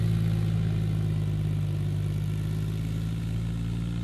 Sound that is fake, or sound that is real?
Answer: real